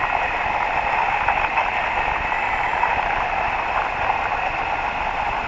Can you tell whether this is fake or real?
real